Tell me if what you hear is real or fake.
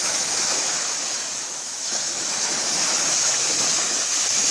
fake